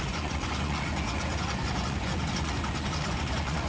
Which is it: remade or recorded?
remade